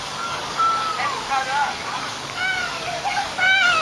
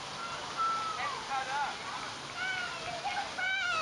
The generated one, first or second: first